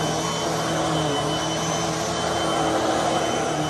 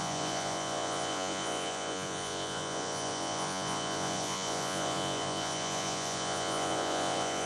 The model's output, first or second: second